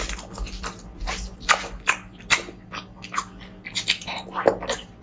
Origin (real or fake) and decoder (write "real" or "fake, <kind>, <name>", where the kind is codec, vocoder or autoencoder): real